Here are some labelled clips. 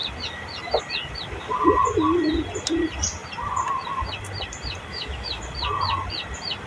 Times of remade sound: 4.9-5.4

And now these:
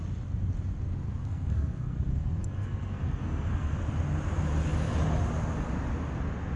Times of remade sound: 1.2-3.8

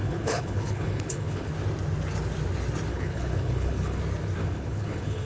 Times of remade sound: 0.0-1.5; 2.9-4.0; 4.4-5.3

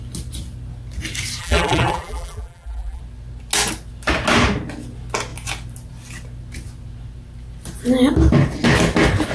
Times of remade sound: 1.4-3.0

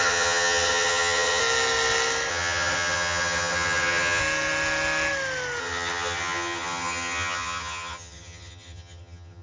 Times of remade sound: 0.0-1.4; 2.3-4.2; 5.6-9.4

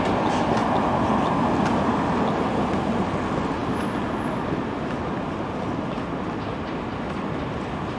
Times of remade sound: none

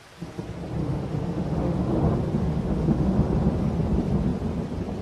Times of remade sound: 0.8-2.0; 2.4-3.3